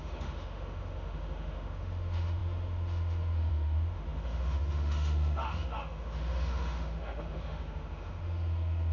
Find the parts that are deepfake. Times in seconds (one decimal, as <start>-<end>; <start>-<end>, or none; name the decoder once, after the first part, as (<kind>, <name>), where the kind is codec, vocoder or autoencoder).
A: 0.0-8.9 (autoencoder, DAC-VAE)